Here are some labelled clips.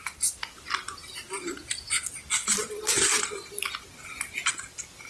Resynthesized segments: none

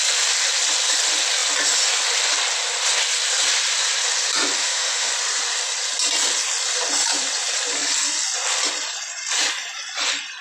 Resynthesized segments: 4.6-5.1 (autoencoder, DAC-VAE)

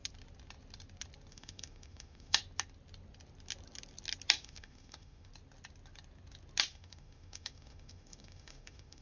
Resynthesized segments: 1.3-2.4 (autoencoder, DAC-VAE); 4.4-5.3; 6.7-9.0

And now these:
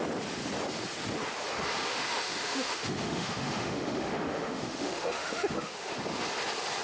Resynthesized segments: 1.8-5.9 (autoencoder, DAC-VAE)